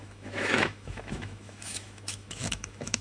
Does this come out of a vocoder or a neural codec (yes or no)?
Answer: yes